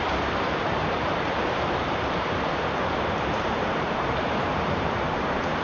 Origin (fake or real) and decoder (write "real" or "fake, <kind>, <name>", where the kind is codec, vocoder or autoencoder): fake, vocoder, BigVGAN v2